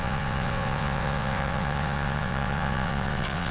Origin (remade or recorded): remade